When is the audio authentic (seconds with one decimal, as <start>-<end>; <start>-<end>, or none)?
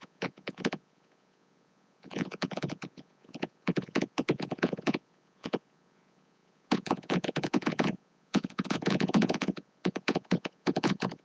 none